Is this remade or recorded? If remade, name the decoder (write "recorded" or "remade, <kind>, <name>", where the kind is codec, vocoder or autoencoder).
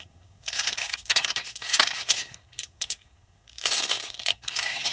remade, codec, SNAC